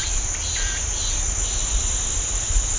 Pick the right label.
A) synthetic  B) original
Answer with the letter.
B